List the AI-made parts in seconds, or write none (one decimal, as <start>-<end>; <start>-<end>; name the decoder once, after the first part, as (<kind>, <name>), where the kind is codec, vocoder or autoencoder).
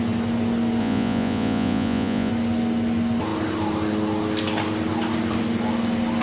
0.8-2.3 (vocoder, Vocos)